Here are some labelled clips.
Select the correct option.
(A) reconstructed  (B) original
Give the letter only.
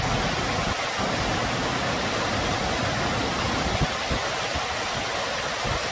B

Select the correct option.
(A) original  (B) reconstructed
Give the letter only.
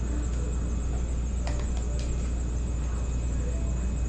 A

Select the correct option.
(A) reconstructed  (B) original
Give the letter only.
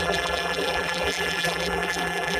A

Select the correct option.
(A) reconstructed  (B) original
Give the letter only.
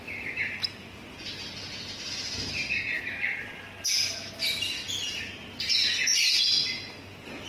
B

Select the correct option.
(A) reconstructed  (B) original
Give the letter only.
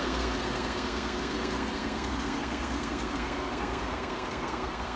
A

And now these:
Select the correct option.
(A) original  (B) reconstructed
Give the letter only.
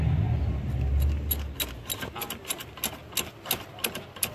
A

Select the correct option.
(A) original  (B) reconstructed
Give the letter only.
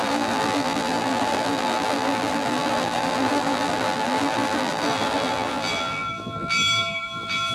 B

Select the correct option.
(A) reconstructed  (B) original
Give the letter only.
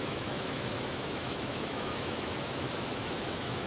A